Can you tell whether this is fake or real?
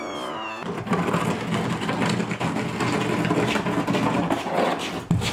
real